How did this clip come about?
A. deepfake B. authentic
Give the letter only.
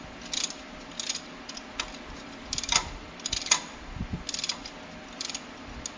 B